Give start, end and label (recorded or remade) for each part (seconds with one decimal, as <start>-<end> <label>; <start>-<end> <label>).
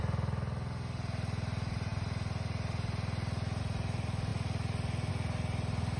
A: 0.0-6.0 recorded